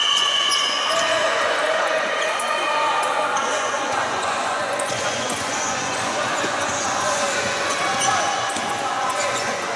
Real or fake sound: fake